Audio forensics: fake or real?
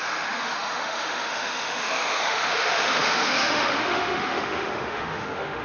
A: fake